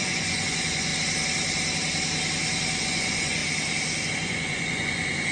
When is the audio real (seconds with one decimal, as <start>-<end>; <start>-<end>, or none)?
0.9-2.8; 3.4-4.1